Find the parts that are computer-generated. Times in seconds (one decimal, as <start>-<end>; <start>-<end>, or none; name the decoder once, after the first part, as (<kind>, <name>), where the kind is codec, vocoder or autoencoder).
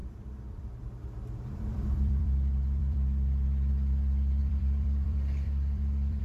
0.0-3.7 (vocoder, BigVGAN v2); 4.4-6.2